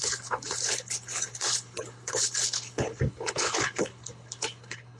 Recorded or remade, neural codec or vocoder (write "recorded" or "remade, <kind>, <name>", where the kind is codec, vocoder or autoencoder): remade, codec, HILCodec